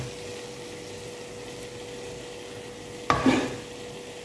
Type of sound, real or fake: real